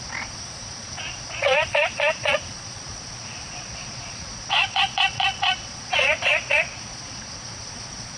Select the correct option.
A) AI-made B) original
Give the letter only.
A